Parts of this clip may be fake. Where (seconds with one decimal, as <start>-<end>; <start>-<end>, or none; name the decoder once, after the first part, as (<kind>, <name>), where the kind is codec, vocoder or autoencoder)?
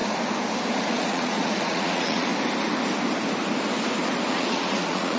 0.8-2.3 (vocoder, Vocos); 4.3-5.2